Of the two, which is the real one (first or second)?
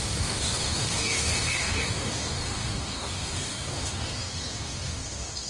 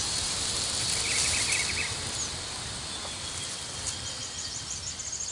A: second